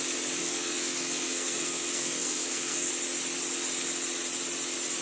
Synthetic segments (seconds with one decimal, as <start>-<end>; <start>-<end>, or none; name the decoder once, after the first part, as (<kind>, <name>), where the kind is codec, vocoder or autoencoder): 0.4-2.9 (codec, SNAC)